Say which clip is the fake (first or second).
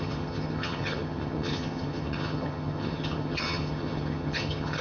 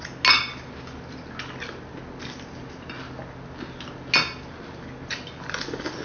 first